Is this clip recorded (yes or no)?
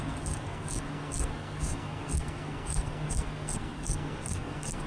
no